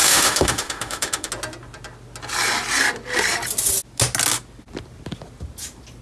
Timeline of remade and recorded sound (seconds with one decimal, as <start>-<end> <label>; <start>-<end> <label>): 0.0-1.3 remade; 1.3-6.0 recorded